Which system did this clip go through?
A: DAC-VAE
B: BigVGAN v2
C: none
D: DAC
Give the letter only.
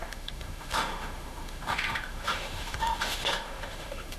A